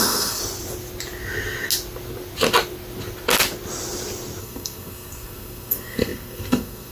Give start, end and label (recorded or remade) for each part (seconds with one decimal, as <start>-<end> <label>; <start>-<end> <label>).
0.0-0.4 remade; 0.4-4.4 recorded; 4.4-6.9 remade